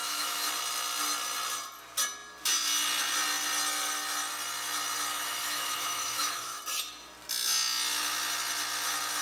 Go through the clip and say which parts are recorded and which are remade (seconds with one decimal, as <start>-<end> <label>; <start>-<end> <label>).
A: 0.0-0.5 remade; 0.5-5.1 recorded; 5.1-6.6 remade; 6.6-9.2 recorded